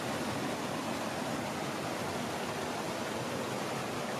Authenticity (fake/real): real